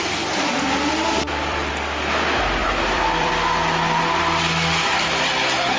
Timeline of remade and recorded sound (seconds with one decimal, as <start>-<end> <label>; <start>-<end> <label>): 0.0-0.5 recorded; 0.5-1.7 remade; 1.7-2.6 recorded; 2.6-3.3 remade; 3.3-5.8 recorded